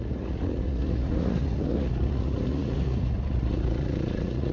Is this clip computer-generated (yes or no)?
yes